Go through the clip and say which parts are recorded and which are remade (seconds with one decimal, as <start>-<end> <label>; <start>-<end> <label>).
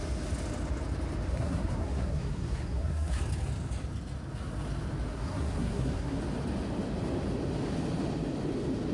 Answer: 0.0-1.3 recorded; 1.3-3.2 remade; 3.2-5.1 recorded; 5.1-6.2 remade; 6.2-8.9 recorded